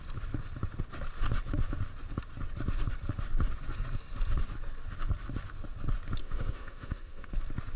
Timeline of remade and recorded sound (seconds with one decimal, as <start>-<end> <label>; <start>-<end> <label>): 0.0-6.2 recorded; 6.2-7.3 remade; 7.3-7.8 recorded